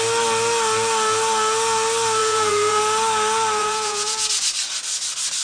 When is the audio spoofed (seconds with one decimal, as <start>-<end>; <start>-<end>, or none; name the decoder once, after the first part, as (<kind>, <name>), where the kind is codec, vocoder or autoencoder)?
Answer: 2.2-2.8 (vocoder, Vocos); 3.6-4.4